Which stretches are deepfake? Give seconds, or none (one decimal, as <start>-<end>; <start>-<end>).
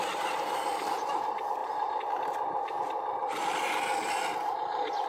none